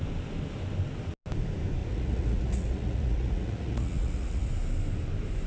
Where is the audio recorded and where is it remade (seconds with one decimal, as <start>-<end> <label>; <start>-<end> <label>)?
0.0-1.8 recorded; 1.8-4.5 remade; 4.5-5.5 recorded

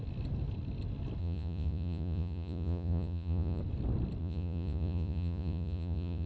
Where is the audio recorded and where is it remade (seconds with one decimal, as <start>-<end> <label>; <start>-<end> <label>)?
0.0-1.2 recorded; 1.2-3.6 remade; 3.6-4.2 recorded; 4.2-6.3 remade

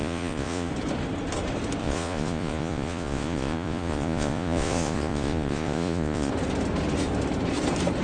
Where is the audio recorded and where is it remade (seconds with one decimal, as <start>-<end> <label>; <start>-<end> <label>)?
0.0-0.7 remade; 0.7-1.8 recorded; 1.8-6.3 remade; 6.3-8.0 recorded

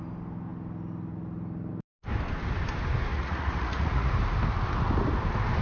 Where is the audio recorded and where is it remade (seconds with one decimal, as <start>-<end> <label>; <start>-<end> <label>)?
0.0-3.1 recorded; 3.1-4.1 remade; 4.1-5.6 recorded

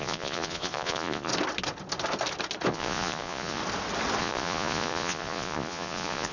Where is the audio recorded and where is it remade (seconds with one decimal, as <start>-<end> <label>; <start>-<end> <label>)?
0.0-1.3 remade; 1.3-2.7 recorded; 2.7-3.6 remade; 3.6-4.2 recorded; 4.2-6.3 remade

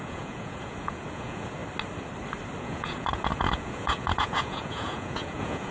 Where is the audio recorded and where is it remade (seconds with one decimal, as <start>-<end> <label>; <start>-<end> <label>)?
0.0-1.6 remade; 1.6-2.6 recorded; 2.6-5.7 remade